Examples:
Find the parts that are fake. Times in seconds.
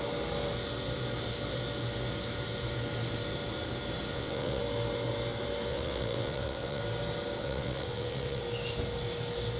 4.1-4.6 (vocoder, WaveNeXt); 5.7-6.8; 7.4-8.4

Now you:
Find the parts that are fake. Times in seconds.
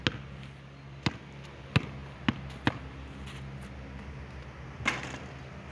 none